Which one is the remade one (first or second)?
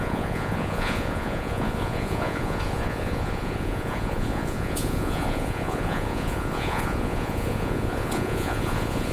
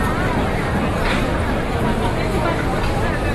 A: first